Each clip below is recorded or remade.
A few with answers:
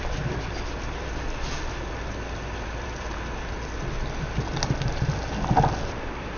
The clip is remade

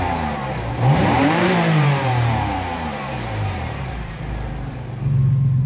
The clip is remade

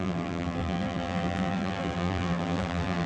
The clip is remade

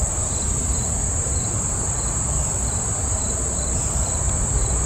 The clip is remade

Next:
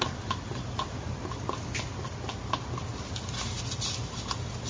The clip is recorded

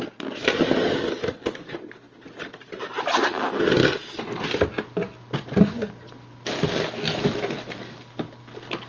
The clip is recorded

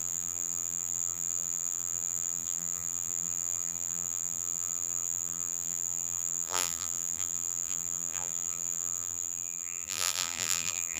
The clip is remade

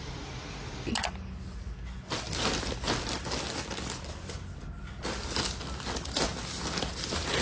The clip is recorded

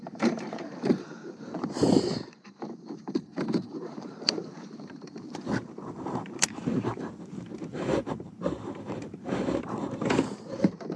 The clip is remade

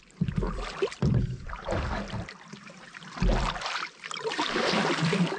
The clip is remade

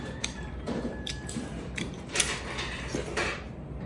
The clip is remade